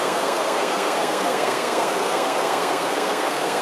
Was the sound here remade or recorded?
remade